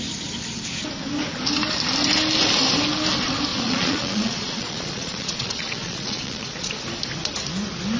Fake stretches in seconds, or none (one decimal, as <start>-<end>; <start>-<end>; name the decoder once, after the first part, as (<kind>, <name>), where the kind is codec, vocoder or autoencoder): 3.5-6.7 (vocoder, Vocos)